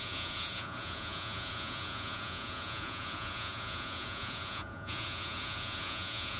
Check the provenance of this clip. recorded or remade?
remade